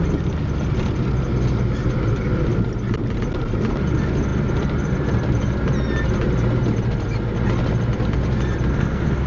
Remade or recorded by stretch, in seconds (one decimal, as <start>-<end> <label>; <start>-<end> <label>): 0.0-8.7 recorded; 8.7-9.3 remade